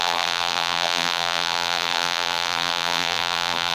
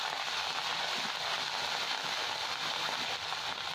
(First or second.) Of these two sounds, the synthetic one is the first